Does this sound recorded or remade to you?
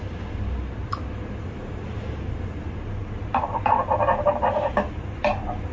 recorded